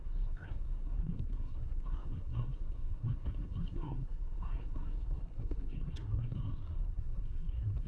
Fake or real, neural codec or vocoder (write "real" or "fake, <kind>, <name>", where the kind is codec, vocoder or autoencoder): fake, codec, SNAC